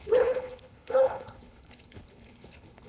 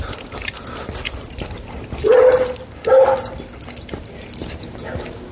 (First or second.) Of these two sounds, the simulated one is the first